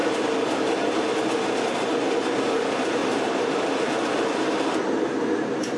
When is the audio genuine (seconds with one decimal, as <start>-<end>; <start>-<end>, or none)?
0.0-3.0; 3.6-5.8